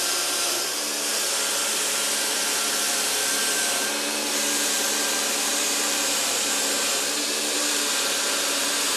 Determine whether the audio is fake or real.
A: fake